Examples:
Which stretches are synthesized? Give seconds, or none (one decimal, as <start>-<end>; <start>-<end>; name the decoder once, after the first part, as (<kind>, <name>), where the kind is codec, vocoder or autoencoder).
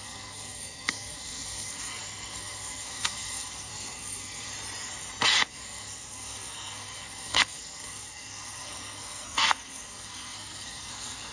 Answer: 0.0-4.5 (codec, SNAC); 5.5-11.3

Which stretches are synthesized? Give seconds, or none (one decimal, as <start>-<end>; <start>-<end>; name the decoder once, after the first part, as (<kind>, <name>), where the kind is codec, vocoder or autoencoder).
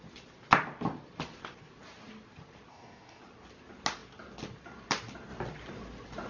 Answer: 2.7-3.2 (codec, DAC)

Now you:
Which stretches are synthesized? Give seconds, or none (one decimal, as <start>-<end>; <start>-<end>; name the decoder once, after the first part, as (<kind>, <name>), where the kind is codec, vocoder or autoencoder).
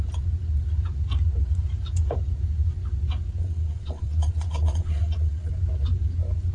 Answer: 3.4-5.5 (vocoder, WaveNeXt)